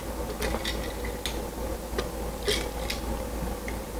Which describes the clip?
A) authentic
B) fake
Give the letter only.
A